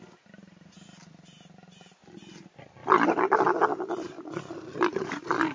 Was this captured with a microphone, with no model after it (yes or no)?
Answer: yes